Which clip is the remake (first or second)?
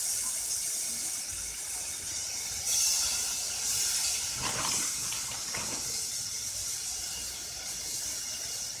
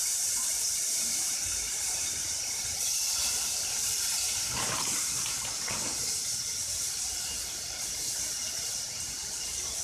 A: second